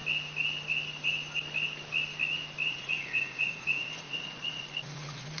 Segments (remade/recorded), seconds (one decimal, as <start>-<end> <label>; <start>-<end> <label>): 0.0-2.7 recorded; 2.7-5.4 remade